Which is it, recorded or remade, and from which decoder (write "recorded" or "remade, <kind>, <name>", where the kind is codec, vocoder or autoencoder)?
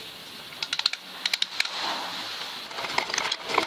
recorded